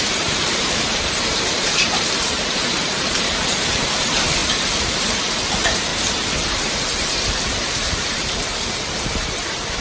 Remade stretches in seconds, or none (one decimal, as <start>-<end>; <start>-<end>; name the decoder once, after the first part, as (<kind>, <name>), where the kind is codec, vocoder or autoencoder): 0.0-5.9 (vocoder, BigVGAN v2); 6.5-9.8